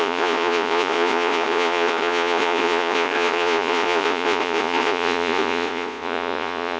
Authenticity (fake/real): fake